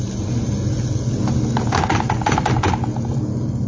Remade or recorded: recorded